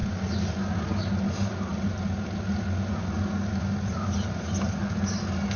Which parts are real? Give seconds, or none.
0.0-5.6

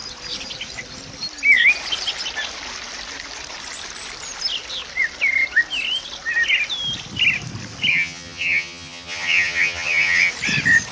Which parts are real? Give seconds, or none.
0.0-7.9; 10.3-10.9

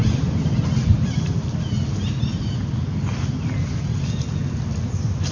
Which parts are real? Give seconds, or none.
0.0-5.3

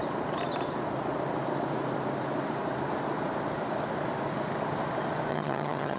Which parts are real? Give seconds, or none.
0.0-5.3

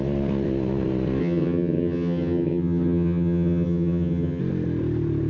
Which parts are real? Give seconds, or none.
0.0-1.2; 4.4-5.3

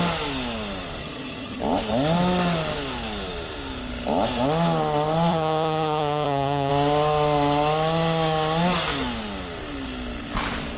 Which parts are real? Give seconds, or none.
0.0-1.0; 1.6-5.3; 6.7-10.8

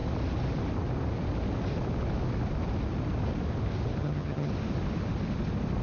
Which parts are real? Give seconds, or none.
0.0-4.0; 4.5-5.8